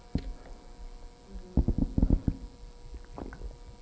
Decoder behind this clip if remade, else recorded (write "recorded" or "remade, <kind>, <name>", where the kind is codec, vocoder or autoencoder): recorded